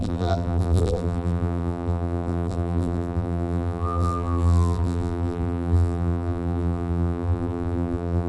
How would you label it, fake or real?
fake